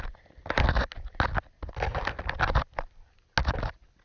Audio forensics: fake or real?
real